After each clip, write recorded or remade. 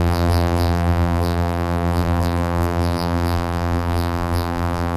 remade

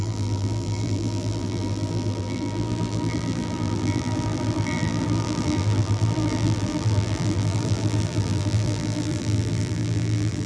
remade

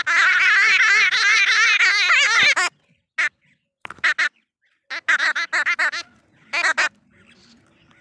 recorded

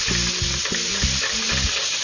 recorded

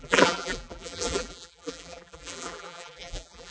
remade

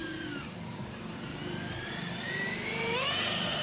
remade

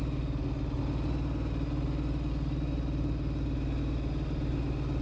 recorded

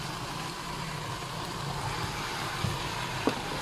remade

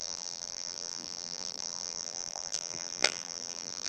remade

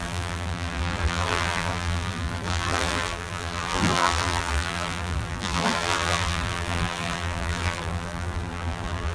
remade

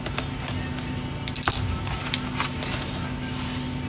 recorded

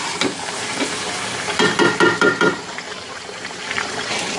remade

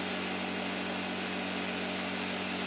recorded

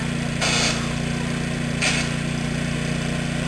recorded